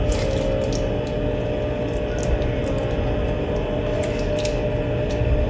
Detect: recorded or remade recorded